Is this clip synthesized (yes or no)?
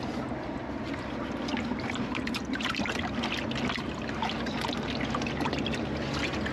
no